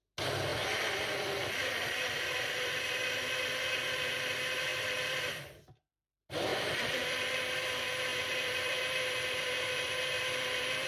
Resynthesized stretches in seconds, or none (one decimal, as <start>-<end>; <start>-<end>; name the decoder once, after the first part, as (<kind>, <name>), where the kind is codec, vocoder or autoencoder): 0.5-2.7 (vocoder, BigVGAN v2); 4.7-5.9; 6.5-7.3; 8.1-10.9